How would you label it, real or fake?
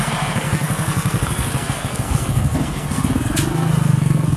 fake